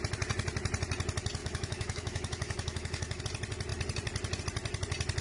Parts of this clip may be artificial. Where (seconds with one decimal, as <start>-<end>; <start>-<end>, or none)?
1.4-3.2